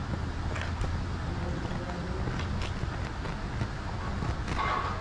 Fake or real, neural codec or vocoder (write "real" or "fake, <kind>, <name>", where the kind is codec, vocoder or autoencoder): real